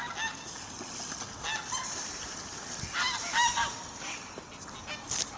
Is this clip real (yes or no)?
yes